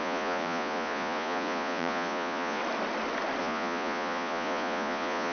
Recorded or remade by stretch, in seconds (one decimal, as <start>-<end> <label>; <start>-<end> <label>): 0.0-2.6 remade; 2.6-3.4 recorded; 3.4-5.3 remade